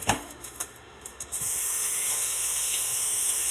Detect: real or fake fake